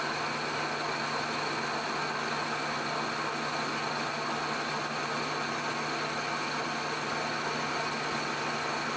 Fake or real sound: real